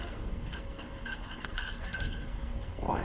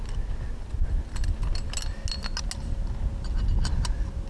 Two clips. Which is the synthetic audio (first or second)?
first